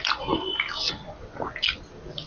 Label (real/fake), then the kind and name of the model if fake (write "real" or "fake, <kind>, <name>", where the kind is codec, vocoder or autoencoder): real